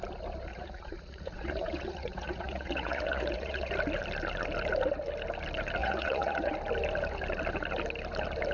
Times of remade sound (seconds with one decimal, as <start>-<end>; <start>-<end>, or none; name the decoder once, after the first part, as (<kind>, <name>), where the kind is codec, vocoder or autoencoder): 0.5-3.7 (vocoder, Vocos); 5.8-6.5